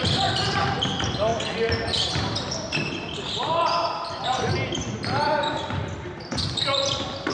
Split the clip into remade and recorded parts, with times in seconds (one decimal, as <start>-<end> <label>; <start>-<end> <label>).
0.0-7.3 recorded